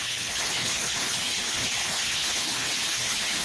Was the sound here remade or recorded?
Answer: remade